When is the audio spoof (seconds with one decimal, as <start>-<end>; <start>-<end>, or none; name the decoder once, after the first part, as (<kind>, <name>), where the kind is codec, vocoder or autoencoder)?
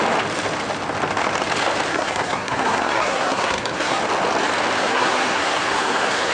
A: 1.9-4.0 (codec, SNAC); 4.8-6.3